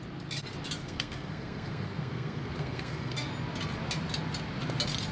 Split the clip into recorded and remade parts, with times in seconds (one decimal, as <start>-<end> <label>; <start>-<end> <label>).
0.0-0.8 recorded; 0.8-3.3 remade; 3.3-5.1 recorded